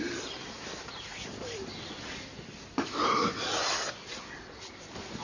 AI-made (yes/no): no